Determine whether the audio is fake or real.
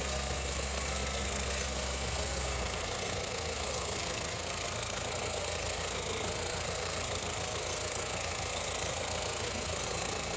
fake